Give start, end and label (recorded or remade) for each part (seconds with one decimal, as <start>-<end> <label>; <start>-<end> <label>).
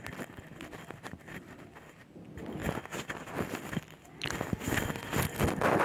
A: 0.0-5.8 recorded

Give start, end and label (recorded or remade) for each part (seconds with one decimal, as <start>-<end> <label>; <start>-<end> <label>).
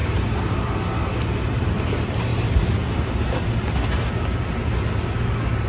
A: 0.0-5.7 recorded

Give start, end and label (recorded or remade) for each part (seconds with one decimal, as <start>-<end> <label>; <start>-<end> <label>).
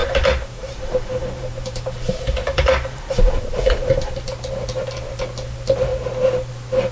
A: 0.0-4.1 remade; 4.1-6.9 recorded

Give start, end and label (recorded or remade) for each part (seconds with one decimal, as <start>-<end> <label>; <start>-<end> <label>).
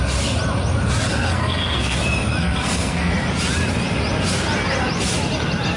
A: 0.0-1.1 recorded; 1.1-2.0 remade; 2.0-2.4 recorded; 2.4-3.1 remade; 3.1-5.8 recorded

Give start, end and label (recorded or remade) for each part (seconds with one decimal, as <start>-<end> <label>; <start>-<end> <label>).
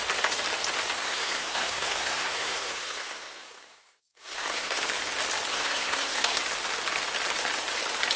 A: 0.0-1.0 recorded; 1.0-4.8 remade; 4.8-5.5 recorded; 5.5-6.4 remade; 6.4-8.2 recorded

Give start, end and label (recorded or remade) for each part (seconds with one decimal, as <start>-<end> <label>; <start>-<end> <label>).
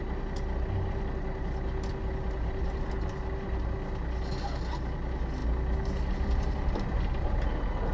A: 0.0-7.9 recorded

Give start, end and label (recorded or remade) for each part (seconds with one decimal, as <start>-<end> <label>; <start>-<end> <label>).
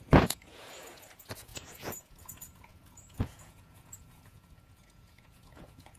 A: 0.0-6.0 remade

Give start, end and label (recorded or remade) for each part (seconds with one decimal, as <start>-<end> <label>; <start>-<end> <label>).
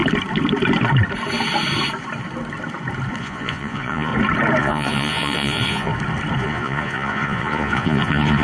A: 0.0-3.2 recorded; 3.2-4.1 remade; 4.1-4.6 recorded; 4.6-5.9 remade; 5.9-6.4 recorded; 6.4-8.4 remade